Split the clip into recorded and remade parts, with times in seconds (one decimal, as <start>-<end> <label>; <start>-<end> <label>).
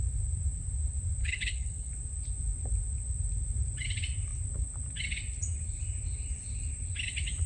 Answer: 0.0-1.2 recorded; 1.2-1.9 remade; 1.9-7.5 recorded